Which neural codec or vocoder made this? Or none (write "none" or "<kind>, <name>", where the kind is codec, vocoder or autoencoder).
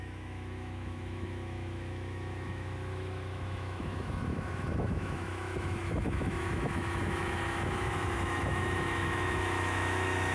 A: autoencoder, DAC-VAE